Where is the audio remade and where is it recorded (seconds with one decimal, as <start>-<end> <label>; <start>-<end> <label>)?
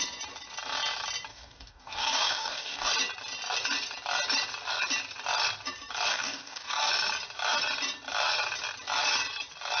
0.0-1.3 recorded; 1.3-2.9 remade; 2.9-6.1 recorded; 6.1-6.9 remade; 6.9-9.8 recorded